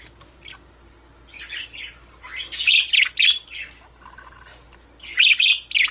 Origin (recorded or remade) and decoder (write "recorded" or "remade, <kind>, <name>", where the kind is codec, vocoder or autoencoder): recorded